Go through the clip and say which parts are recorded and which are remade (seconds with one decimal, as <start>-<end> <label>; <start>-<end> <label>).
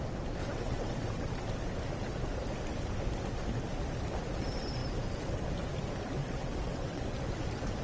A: 0.0-0.4 recorded; 0.4-1.5 remade; 1.5-6.2 recorded; 6.2-7.0 remade; 7.0-7.8 recorded